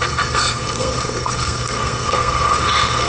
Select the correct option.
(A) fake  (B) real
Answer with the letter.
A